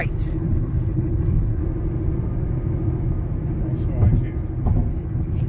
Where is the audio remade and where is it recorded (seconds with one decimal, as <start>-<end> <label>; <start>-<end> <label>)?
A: 0.0-1.6 remade; 1.6-4.9 recorded; 4.9-5.5 remade